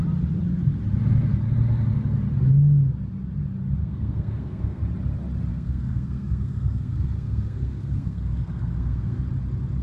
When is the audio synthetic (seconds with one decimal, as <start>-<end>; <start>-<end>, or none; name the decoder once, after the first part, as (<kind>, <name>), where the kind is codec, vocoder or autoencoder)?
3.8-4.8 (codec, SNAC); 5.5-9.2